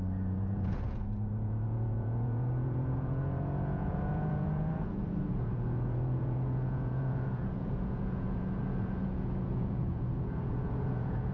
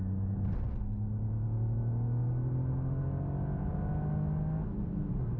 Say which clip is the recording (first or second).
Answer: second